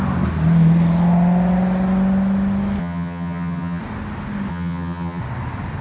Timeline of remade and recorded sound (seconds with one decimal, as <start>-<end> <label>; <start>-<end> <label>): 0.0-2.8 recorded; 2.8-3.8 remade; 3.8-4.5 recorded; 4.5-5.2 remade; 5.2-5.8 recorded